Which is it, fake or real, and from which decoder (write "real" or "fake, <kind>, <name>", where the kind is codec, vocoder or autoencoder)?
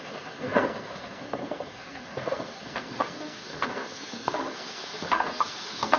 fake, codec, SNAC